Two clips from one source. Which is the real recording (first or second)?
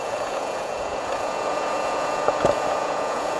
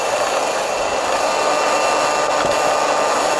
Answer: second